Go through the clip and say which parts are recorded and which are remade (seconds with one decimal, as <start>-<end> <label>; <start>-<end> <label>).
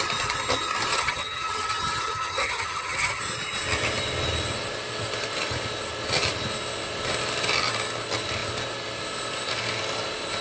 0.0-0.9 recorded; 0.9-3.2 remade; 3.2-10.4 recorded